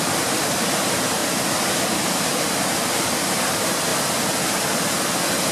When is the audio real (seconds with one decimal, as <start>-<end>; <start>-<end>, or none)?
1.2-3.5; 3.9-5.5